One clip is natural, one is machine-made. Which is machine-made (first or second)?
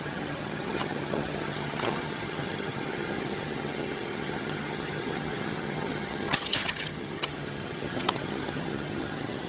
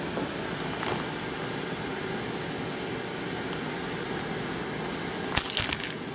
first